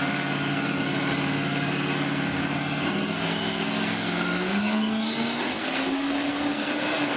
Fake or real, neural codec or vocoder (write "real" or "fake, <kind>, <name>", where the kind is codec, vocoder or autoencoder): fake, codec, SNAC